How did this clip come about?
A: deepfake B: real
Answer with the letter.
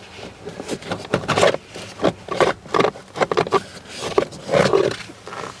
B